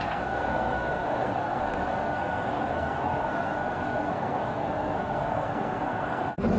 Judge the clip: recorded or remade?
remade